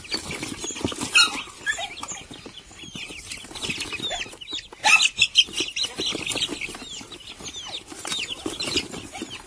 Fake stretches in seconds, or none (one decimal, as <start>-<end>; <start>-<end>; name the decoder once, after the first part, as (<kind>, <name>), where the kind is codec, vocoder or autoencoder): none